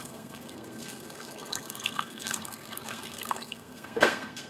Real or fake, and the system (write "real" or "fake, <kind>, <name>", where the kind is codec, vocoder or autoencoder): fake, codec, SNAC